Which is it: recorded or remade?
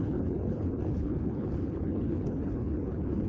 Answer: remade